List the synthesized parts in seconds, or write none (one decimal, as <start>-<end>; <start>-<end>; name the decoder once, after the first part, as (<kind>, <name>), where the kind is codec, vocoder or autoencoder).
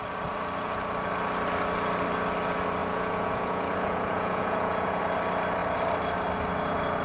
2.8-5.0 (vocoder, Vocos)